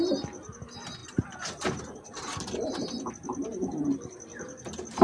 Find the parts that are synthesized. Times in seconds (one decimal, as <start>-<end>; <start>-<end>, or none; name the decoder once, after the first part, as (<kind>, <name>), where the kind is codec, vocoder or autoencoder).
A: 1.0-3.1 (vocoder, BigVGAN v2); 3.5-4.1